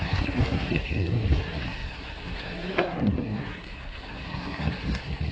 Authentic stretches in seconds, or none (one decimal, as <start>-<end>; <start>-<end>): none